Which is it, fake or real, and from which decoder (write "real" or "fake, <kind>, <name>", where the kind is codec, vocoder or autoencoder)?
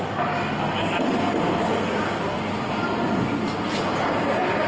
real